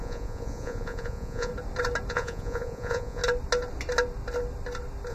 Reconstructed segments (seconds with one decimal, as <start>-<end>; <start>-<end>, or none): 0.0-1.5; 2.1-3.2